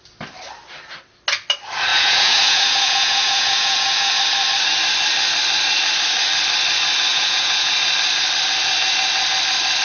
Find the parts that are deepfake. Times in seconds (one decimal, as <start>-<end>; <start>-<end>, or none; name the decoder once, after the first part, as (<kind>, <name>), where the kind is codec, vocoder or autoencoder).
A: 1.9-4.2 (vocoder, Vocos); 7.1-7.7